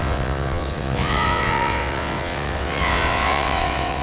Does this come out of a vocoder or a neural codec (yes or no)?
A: yes